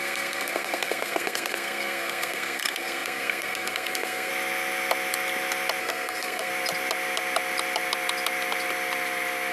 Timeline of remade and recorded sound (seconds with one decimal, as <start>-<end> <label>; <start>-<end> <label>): 0.0-4.3 remade; 4.3-5.8 recorded; 5.8-6.5 remade; 6.5-9.5 recorded